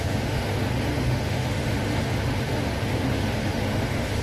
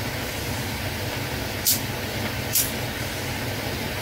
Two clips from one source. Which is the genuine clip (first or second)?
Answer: second